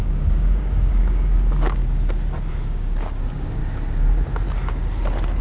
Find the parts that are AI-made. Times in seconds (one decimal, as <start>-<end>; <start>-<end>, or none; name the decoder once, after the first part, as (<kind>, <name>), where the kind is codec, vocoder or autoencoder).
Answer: 0.0-1.8 (codec, DAC); 2.5-3.6